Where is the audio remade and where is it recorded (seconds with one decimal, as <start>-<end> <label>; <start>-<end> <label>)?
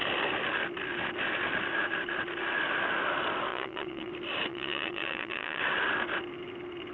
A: 0.0-3.5 recorded; 3.5-4.1 remade; 4.1-4.5 recorded; 4.5-5.6 remade; 5.6-6.9 recorded